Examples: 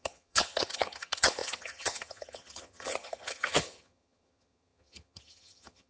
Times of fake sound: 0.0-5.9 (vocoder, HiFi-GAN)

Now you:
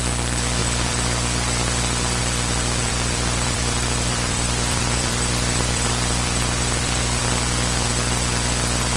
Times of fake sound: 0.6-2.2 (vocoder, BigVGAN v2); 2.9-7.2

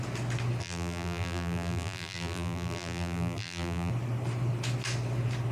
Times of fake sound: 0.6-3.9 (vocoder, BigVGAN v2)

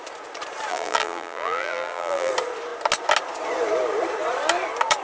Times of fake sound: 0.7-2.3 (vocoder, BigVGAN v2)

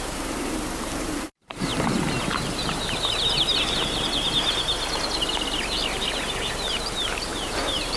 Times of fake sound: 0.0-1.7 (vocoder, BigVGAN v2); 6.5-8.0

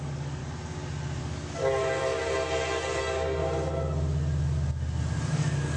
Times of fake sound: 0.0-0.4 (codec, DAC); 1.2-1.8; 3.0-3.4; 5.3-5.8

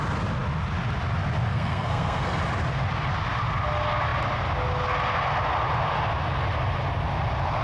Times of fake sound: 1.5-2.4 (codec, SNAC)

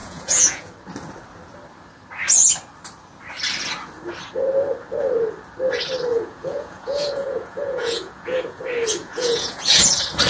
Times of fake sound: 0.0-0.7 (vocoder, Vocos); 6.1-8.6; 9.0-9.9